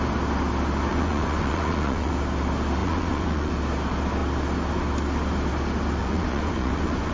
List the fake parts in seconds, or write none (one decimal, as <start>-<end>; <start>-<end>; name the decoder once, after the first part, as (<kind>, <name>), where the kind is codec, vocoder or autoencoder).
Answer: 0.9-2.1 (vocoder, Vocos); 2.8-3.5; 6.0-7.1